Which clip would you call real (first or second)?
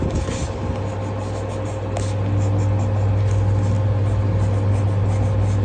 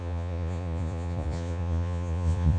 first